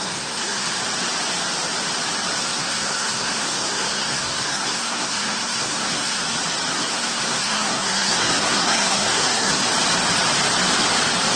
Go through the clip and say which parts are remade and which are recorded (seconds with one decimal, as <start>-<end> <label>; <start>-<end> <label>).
0.0-0.8 remade; 0.8-2.4 recorded; 2.4-6.2 remade; 6.2-6.7 recorded; 6.7-9.6 remade; 9.6-11.4 recorded